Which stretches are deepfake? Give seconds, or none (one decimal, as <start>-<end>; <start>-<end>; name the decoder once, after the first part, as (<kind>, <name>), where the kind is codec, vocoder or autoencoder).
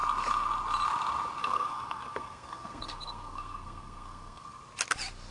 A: 1.4-4.6 (codec, SNAC)